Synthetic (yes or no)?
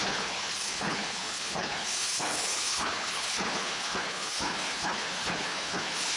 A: yes